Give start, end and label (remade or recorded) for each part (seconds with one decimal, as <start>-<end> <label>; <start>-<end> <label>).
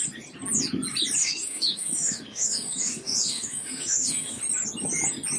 0.0-1.2 recorded; 1.2-4.4 remade; 4.4-5.4 recorded